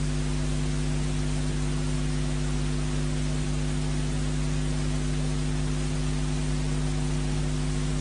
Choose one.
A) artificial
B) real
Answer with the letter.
B